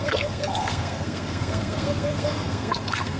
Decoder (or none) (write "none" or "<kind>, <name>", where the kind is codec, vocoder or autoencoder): codec, SNAC